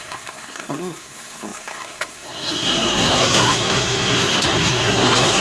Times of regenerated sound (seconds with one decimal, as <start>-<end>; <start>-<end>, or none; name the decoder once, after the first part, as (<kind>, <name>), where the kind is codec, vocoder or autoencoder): 0.0-5.4 (codec, SNAC)

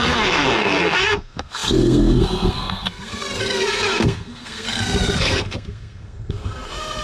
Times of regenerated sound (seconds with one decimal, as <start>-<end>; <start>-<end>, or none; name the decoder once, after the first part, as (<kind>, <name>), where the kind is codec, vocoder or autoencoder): 0.0-7.0 (codec, SNAC)

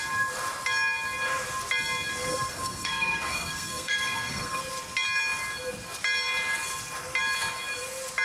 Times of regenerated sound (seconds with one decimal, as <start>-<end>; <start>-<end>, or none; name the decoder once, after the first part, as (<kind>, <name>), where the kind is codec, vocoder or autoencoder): 2.3-4.6 (codec, SNAC)

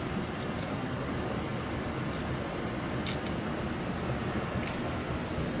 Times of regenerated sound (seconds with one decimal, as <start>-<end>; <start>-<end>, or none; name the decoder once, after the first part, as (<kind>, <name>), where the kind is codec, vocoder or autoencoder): 0.6-1.1 (codec, SNAC)

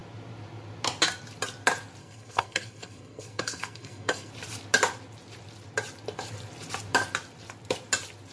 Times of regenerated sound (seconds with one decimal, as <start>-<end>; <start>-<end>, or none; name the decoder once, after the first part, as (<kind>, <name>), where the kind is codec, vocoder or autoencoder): 2.0-4.3 (codec, SNAC)